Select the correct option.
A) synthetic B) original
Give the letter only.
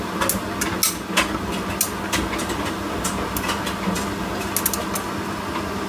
B